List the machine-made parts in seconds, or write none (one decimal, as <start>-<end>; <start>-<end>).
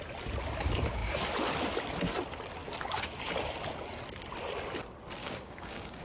5.2-6.0